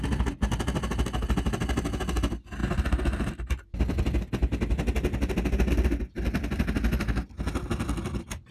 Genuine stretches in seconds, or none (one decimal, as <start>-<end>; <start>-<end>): 0.0-8.5